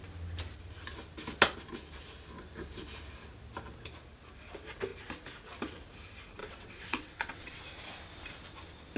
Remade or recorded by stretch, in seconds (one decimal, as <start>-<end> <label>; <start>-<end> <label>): 0.0-6.4 recorded; 6.4-7.6 remade; 7.6-9.0 recorded